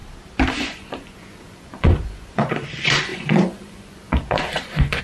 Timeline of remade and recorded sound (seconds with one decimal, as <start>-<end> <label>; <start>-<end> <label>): 0.0-0.5 recorded; 0.5-5.0 remade